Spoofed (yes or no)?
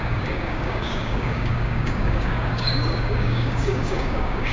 yes